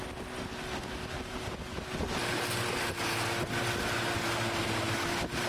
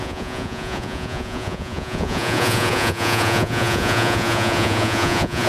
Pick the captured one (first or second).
first